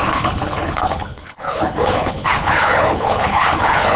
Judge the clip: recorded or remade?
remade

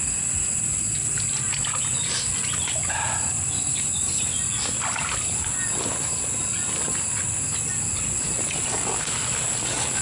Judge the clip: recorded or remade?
recorded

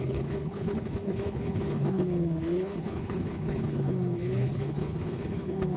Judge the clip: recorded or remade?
remade